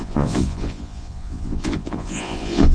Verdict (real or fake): fake